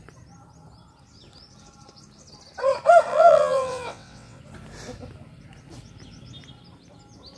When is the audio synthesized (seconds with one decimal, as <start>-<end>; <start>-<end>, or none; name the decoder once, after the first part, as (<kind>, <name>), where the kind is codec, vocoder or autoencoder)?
3.1-4.4 (vocoder, WaveNeXt)